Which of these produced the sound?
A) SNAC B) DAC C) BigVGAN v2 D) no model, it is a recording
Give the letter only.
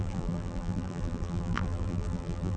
C